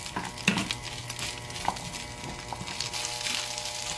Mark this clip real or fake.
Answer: real